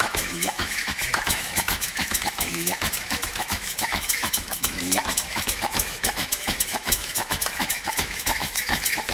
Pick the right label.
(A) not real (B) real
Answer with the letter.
A